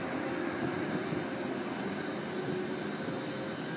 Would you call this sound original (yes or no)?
yes